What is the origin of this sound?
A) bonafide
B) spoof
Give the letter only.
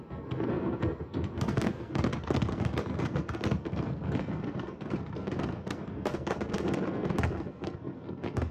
B